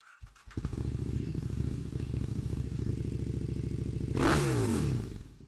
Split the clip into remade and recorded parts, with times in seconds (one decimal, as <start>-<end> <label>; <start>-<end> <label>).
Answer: 0.0-2.9 remade; 2.9-4.4 recorded; 4.4-5.5 remade